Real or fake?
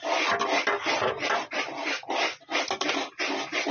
real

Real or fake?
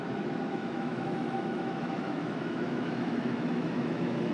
fake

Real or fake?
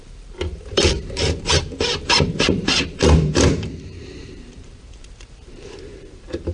fake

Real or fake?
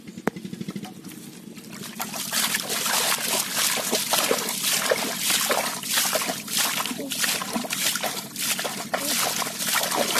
real